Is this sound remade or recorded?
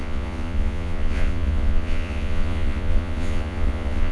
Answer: remade